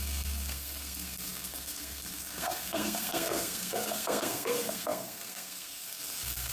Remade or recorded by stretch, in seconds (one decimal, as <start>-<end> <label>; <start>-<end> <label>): 0.0-6.5 remade